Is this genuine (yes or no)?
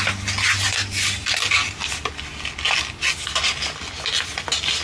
yes